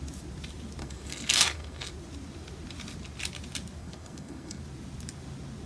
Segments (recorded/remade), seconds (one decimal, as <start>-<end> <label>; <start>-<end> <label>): 0.0-0.8 recorded; 0.8-1.9 remade; 1.9-3.8 recorded; 3.8-4.6 remade; 4.6-5.7 recorded